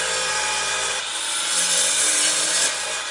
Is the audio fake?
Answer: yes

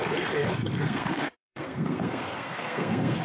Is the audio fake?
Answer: yes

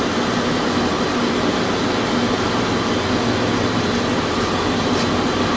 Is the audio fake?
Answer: no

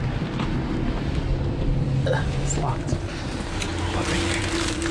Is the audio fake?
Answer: no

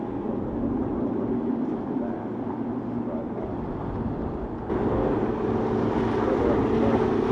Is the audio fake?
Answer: no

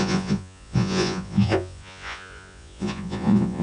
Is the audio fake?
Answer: yes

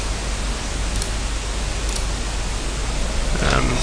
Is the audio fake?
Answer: no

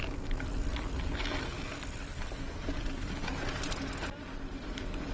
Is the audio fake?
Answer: no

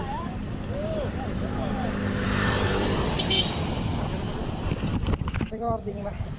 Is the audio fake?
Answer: yes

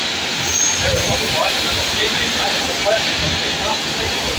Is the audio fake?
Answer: no